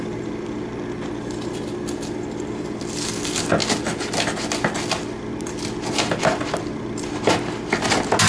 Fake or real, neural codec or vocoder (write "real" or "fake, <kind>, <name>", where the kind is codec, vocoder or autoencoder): real